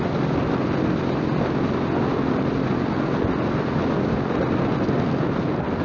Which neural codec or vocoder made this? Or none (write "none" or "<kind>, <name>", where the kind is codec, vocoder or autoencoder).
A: none